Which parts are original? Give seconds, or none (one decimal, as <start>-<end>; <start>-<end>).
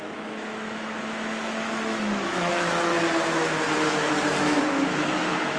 2.9-4.4